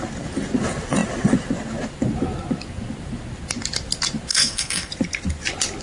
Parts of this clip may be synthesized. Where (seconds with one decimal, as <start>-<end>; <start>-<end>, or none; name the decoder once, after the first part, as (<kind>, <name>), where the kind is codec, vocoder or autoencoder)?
4.3-4.9 (codec, SNAC)